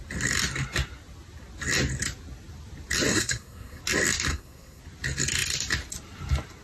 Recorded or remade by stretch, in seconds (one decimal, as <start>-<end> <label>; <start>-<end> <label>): 0.0-3.1 recorded; 3.1-3.8 remade; 3.8-4.3 recorded; 4.3-4.8 remade; 4.8-6.6 recorded